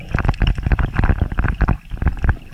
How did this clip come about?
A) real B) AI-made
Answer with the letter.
A